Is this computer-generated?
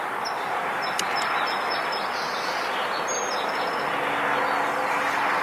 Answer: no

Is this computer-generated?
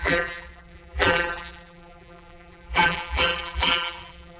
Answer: yes